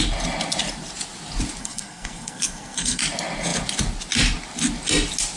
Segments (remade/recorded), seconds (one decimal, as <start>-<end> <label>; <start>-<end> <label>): 0.0-1.6 recorded; 1.6-3.0 remade; 3.0-5.4 recorded